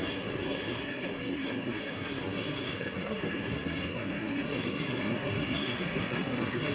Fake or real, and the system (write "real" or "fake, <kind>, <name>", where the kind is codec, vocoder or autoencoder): fake, codec, SNAC